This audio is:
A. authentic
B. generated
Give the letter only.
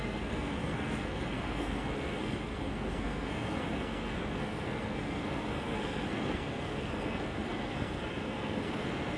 B